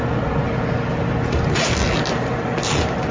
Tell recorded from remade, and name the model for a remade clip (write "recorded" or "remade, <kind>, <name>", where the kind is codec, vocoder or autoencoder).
recorded